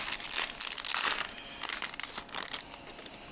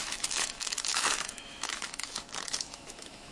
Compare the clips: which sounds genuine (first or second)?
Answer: first